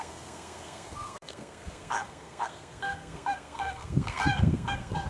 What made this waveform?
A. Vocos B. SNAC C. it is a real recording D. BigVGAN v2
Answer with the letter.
B